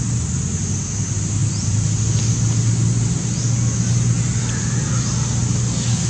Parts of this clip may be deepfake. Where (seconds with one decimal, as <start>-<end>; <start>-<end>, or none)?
1.4-2.2